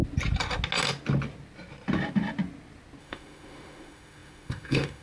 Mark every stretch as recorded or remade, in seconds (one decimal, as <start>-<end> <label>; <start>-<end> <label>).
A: 0.0-3.0 recorded; 3.0-5.0 remade